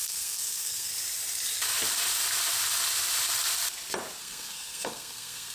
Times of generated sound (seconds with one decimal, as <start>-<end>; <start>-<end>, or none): 0.0-0.9; 4.2-5.5